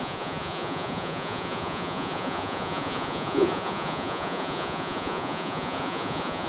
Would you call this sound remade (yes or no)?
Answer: yes